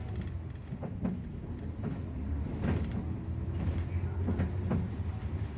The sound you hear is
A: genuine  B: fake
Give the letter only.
A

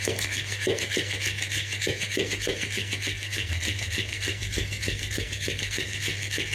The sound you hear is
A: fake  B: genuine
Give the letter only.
A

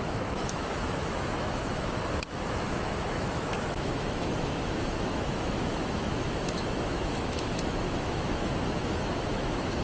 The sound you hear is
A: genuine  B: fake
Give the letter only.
B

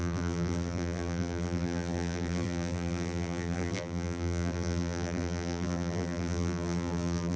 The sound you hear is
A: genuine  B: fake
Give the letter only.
B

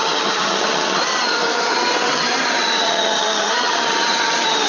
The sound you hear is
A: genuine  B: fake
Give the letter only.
B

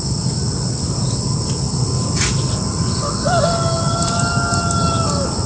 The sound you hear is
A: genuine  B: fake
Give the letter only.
A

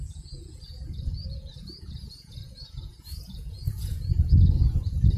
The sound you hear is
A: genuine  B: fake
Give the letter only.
B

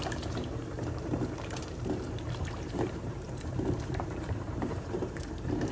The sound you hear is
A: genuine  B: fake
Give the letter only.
B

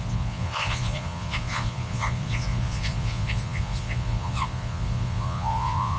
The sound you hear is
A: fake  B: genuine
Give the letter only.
A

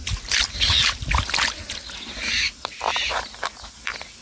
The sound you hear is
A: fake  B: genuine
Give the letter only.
A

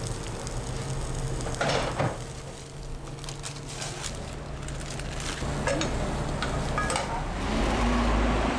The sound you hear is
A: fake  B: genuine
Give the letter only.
B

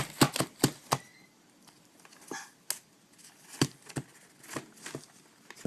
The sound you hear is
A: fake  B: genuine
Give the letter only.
B